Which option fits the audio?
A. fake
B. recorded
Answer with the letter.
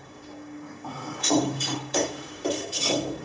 A